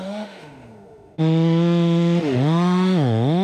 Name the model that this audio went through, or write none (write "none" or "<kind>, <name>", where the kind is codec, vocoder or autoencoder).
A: autoencoder, DAC-VAE